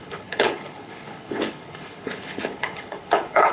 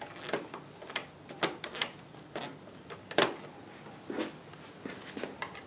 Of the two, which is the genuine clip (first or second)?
second